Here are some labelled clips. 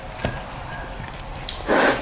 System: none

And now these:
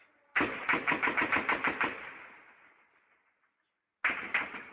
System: none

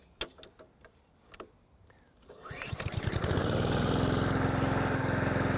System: none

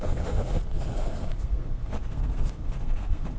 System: codec, SNAC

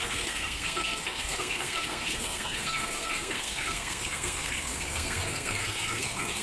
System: codec, SNAC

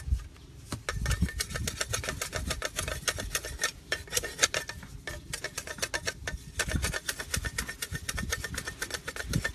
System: none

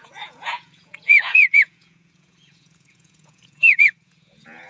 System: vocoder, Vocos